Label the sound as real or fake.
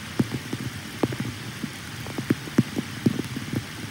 real